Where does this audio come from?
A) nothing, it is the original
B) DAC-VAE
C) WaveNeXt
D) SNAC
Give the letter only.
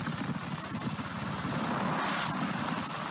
A